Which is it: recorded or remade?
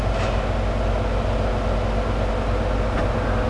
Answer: recorded